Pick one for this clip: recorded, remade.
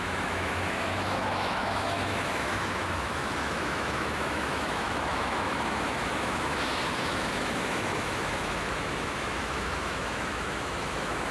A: remade